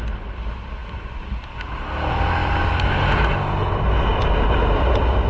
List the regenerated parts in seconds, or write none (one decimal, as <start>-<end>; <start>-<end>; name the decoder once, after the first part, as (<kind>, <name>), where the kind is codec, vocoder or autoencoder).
none